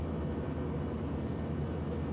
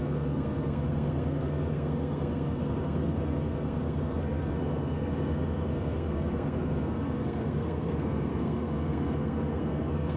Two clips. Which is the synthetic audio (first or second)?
second